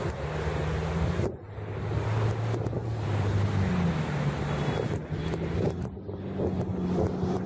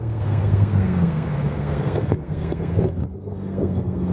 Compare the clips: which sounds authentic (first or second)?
first